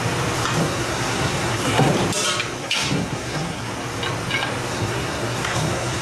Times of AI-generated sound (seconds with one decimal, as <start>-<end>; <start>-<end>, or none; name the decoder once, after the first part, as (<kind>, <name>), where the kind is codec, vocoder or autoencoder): 0.6-1.9 (codec, SNAC); 2.6-3.7; 4.7-6.0